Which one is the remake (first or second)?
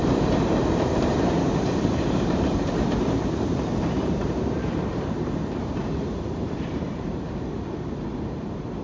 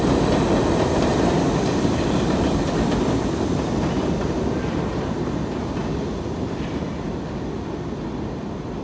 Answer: first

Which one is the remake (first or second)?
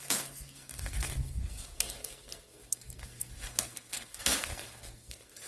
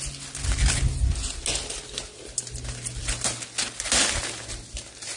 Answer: first